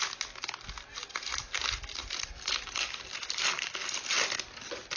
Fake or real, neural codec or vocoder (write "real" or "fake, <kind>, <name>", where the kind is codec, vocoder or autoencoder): real